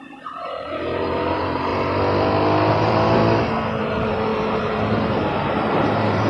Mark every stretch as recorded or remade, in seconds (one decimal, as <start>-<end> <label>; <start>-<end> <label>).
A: 0.0-1.7 remade; 1.7-2.7 recorded; 2.7-3.2 remade; 3.2-3.8 recorded; 3.8-6.3 remade